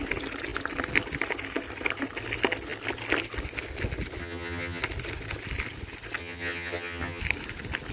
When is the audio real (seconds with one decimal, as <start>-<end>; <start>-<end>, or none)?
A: 0.0-4.2; 4.8-6.2; 7.2-7.9